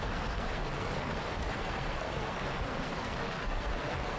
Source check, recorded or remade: remade